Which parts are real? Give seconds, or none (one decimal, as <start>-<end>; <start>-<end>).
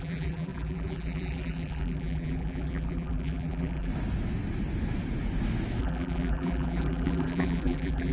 3.9-5.8